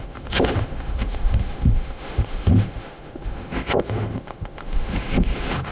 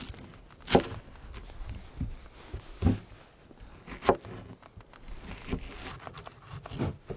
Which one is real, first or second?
second